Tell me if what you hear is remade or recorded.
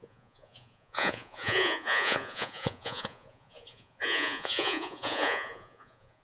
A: remade